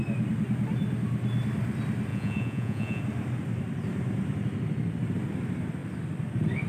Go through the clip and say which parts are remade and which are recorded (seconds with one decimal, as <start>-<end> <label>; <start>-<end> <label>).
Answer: 0.0-2.1 recorded; 2.1-3.0 remade; 3.0-6.7 recorded